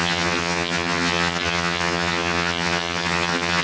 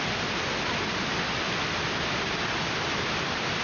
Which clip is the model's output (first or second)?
first